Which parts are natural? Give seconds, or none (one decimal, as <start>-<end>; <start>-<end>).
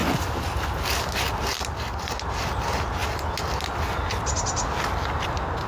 0.0-5.7